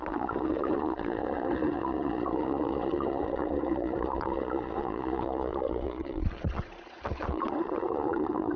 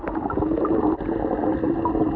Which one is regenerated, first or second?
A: first